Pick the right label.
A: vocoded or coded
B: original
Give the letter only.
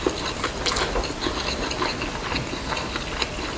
B